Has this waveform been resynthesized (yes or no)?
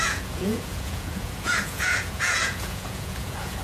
yes